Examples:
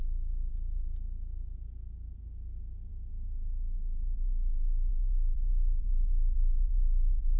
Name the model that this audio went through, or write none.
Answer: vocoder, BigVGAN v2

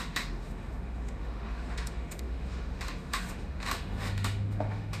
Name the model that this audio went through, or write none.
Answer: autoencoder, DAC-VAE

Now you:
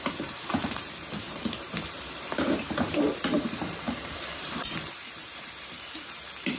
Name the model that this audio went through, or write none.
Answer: vocoder, BigVGAN v2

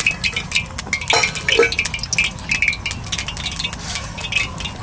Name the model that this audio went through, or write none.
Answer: none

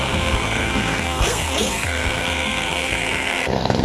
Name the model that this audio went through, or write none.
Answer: codec, SNAC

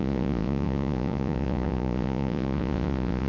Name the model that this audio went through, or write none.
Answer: vocoder, Vocos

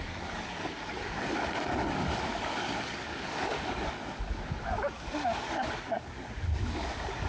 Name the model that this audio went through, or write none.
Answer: codec, DAC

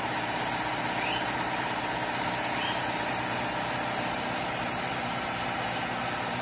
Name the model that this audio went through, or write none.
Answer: none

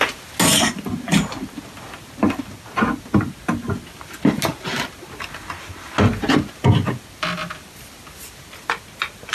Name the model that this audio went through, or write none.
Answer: none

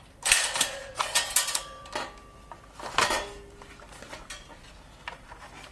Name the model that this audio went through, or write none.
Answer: none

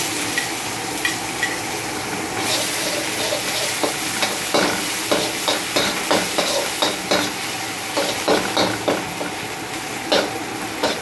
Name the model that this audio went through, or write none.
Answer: none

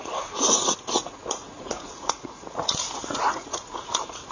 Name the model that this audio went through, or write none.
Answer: vocoder, Vocos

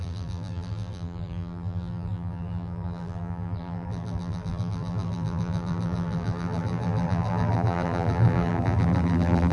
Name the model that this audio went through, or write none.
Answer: vocoder, BigVGAN v2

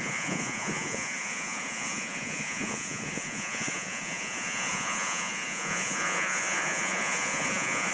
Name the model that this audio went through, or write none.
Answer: vocoder, Vocos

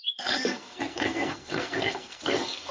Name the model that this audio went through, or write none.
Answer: codec, SNAC